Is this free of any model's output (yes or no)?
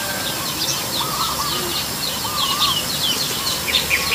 yes